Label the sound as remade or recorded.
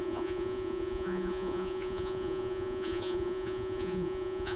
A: remade